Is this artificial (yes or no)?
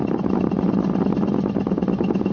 no